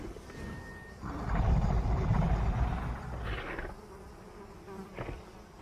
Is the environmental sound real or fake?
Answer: real